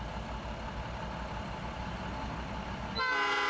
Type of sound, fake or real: real